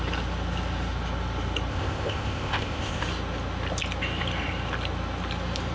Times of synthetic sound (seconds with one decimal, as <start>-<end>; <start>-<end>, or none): 1.7-3.0